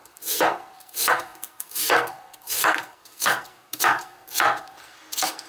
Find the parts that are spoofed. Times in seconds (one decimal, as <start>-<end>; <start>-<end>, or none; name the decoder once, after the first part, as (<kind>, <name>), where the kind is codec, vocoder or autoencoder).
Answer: 0.0-5.5 (codec, SNAC)